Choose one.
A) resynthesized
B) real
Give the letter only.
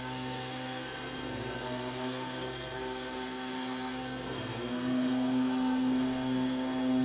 A